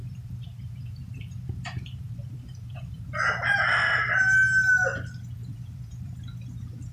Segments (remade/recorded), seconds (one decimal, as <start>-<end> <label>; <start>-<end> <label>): 0.0-3.0 remade; 3.0-5.4 recorded; 5.4-6.2 remade; 6.2-6.9 recorded